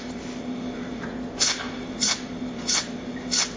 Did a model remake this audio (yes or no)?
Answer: no